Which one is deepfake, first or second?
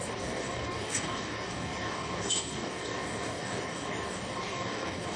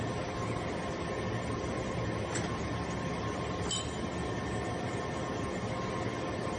first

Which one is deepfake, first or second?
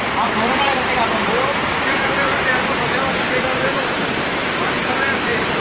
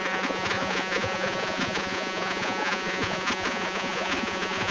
second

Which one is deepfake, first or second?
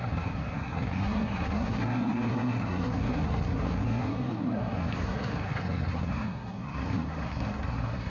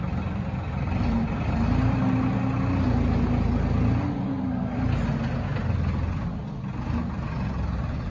first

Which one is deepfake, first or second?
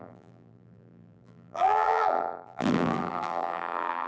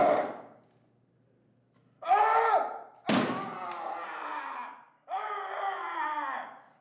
first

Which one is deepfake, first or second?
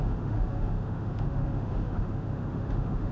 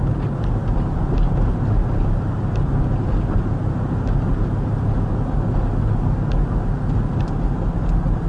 first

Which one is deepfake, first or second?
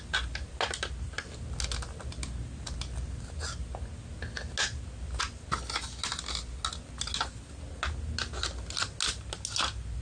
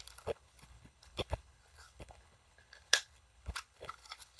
second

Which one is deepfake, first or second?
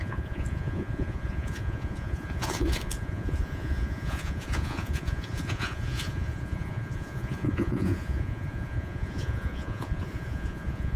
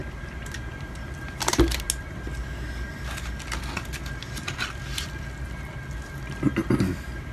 first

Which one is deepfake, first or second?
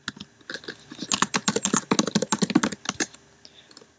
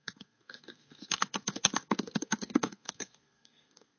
second